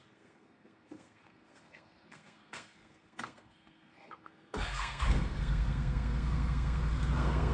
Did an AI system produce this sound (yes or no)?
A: yes